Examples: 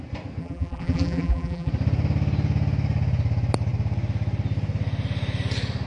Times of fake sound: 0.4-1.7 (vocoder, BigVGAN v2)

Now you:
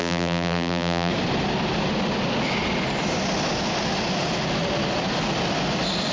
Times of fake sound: 0.0-1.1 (vocoder, BigVGAN v2)